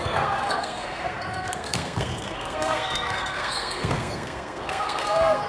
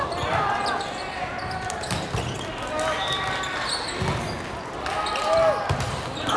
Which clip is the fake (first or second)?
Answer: first